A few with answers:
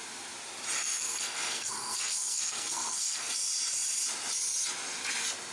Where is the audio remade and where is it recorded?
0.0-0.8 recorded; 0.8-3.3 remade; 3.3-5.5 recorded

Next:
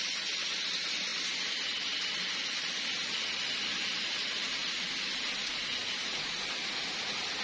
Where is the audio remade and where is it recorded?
0.0-7.4 recorded

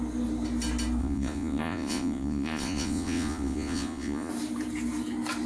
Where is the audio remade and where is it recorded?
0.0-1.0 recorded; 1.0-4.3 remade; 4.3-5.5 recorded

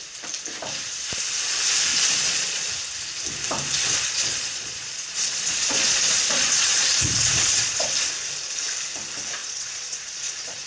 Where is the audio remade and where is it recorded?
0.0-1.9 recorded; 1.9-2.7 remade; 2.7-3.8 recorded; 3.8-7.9 remade; 7.9-9.4 recorded; 9.4-10.7 remade